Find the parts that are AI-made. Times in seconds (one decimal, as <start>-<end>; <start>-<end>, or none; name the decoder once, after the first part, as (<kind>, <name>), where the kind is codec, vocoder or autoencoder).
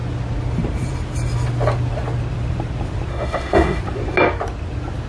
3.1-3.8 (autoencoder, DAC-VAE)